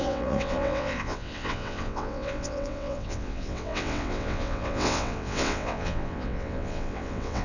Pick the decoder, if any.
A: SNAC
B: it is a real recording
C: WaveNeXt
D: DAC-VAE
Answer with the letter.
C